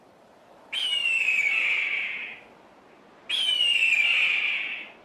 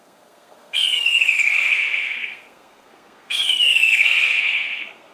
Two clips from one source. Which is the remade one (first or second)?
second